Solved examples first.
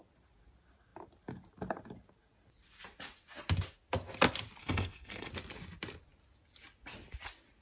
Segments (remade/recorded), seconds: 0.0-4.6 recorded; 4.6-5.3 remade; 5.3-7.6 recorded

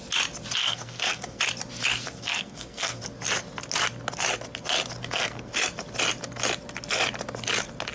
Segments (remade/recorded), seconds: 0.0-0.6 recorded; 0.6-1.4 remade; 1.4-1.9 recorded; 1.9-3.0 remade; 3.0-5.0 recorded; 5.0-5.5 remade; 5.5-7.9 recorded

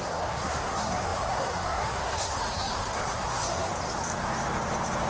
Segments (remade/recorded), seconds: 0.0-3.7 remade; 3.7-5.1 recorded